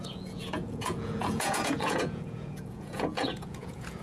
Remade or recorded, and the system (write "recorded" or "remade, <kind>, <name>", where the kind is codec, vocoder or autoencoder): remade, vocoder, Vocos